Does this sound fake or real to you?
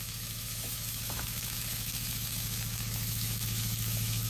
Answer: fake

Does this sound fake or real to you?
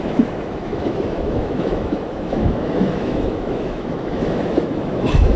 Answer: fake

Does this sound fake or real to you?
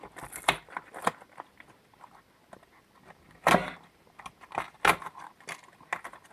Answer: real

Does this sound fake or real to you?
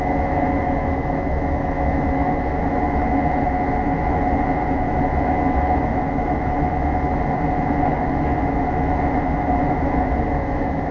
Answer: fake